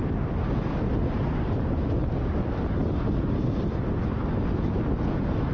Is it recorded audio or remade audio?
recorded